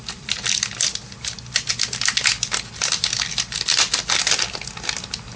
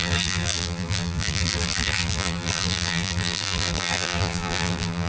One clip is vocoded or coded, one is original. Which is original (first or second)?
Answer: first